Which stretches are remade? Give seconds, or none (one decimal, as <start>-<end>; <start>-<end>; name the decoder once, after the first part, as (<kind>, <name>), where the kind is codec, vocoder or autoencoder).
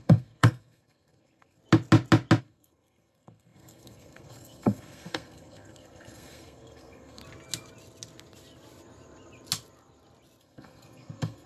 0.0-1.6 (codec, SNAC); 2.4-7.2; 10.4-11.5